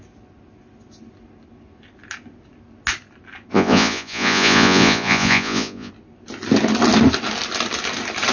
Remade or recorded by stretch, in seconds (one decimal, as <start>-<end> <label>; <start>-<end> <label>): 0.0-3.5 recorded; 3.5-5.9 remade; 5.9-8.3 recorded